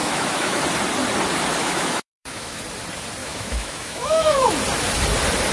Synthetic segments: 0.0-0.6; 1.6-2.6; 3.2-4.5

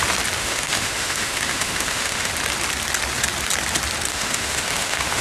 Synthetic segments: 0.4-2.3; 4.1-5.2

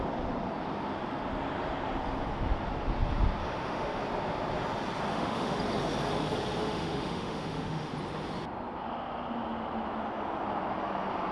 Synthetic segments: 3.4-4.0; 5.1-5.6; 6.6-7.9

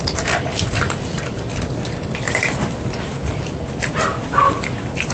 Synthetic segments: none